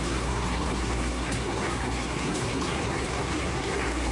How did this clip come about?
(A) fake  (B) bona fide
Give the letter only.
A